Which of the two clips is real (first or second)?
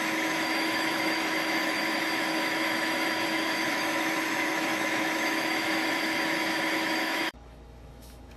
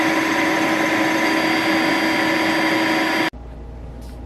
second